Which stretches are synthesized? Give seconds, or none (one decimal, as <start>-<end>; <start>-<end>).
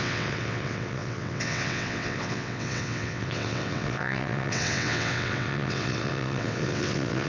0.0-7.3